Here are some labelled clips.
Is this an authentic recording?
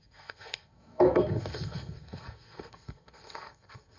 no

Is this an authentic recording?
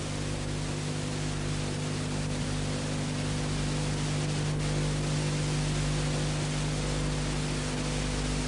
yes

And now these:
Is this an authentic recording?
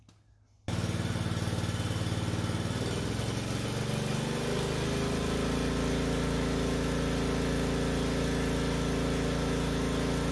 yes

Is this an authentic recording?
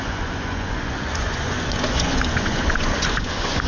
no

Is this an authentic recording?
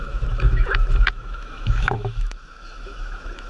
no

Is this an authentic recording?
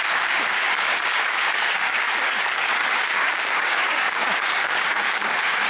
no